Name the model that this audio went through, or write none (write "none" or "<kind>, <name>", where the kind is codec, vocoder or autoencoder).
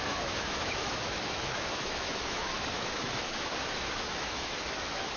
autoencoder, DAC-VAE